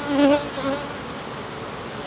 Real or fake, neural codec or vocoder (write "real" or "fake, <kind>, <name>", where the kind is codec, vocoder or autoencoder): real